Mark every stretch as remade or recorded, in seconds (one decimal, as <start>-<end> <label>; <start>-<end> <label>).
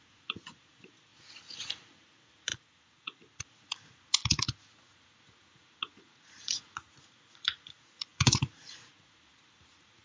0.0-10.0 remade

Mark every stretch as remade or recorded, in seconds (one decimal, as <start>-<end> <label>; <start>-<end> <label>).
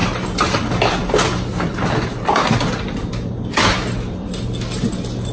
0.0-5.3 recorded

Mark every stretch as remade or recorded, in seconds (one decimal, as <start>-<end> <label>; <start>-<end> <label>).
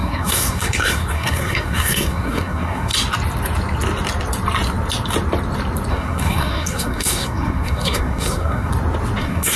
0.0-2.9 remade; 2.9-5.9 recorded; 5.9-8.7 remade; 8.7-9.2 recorded; 9.2-9.6 remade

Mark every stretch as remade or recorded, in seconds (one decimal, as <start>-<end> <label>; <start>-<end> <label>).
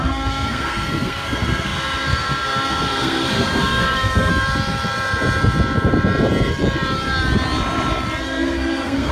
0.0-4.3 remade; 4.3-8.2 recorded; 8.2-9.1 remade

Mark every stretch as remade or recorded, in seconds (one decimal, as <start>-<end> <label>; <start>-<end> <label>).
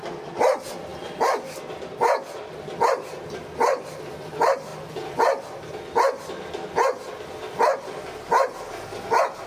0.0-9.5 recorded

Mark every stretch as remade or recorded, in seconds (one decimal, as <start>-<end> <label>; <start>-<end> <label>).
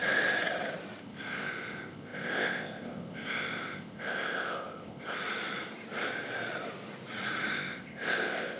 0.0-1.0 recorded; 1.0-5.2 remade; 5.2-7.5 recorded; 7.5-8.6 remade